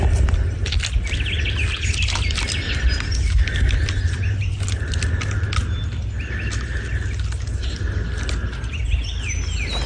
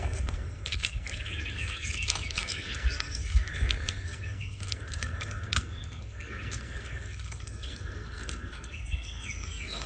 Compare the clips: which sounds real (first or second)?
first